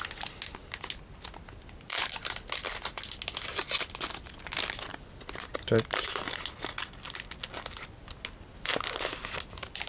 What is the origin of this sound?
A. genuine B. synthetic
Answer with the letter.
A